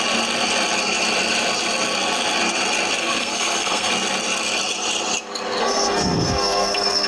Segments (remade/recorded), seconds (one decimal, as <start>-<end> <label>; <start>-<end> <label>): 0.0-3.0 recorded; 3.0-3.9 remade; 3.9-5.6 recorded; 5.6-7.1 remade